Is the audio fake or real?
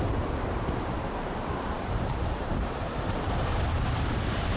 fake